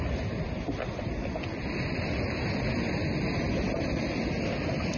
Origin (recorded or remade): recorded